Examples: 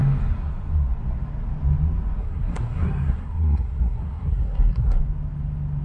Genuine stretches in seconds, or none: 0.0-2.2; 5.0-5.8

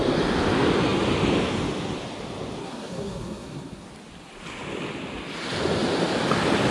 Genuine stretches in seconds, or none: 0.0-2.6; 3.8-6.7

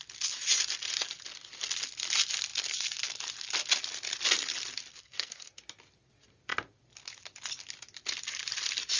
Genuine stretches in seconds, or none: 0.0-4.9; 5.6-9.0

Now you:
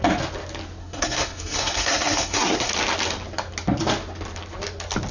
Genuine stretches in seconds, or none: 0.0-0.8; 2.7-5.1